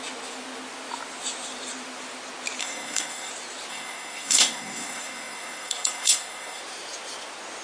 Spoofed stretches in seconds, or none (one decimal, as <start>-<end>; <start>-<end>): 2.6-3.3; 3.7-6.6